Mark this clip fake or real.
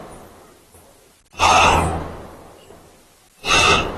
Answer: real